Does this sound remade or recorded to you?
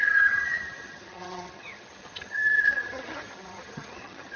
remade